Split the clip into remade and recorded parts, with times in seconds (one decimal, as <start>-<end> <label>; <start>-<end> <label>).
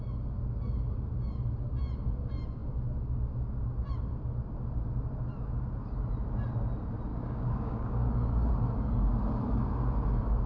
0.0-7.1 recorded; 7.1-8.5 remade; 8.5-10.5 recorded